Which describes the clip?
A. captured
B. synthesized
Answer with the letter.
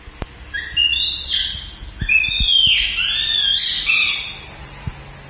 A